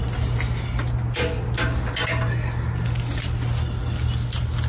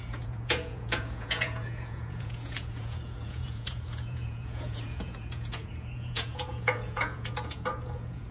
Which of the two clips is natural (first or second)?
first